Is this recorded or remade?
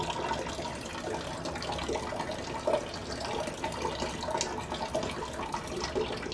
recorded